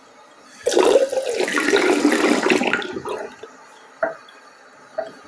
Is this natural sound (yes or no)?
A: yes